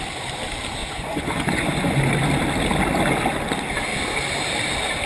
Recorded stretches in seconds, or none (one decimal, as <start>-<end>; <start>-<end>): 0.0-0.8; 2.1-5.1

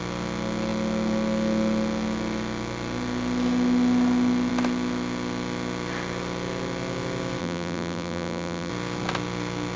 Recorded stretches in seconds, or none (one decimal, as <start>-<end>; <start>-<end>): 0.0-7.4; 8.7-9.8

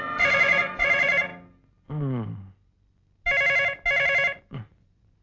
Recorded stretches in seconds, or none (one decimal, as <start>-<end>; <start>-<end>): 1.3-4.4